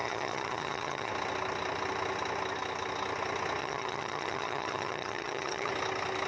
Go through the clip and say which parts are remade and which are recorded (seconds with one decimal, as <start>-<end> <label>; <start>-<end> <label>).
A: 0.0-1.1 remade; 1.1-3.6 recorded; 3.6-5.7 remade; 5.7-6.3 recorded